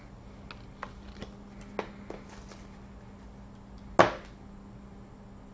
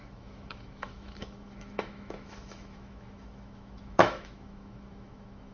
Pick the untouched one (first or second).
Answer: first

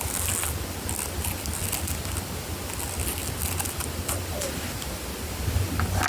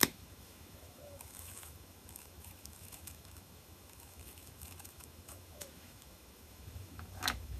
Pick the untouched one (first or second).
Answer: first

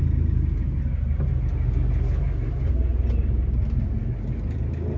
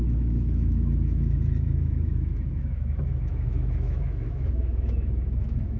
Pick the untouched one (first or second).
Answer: first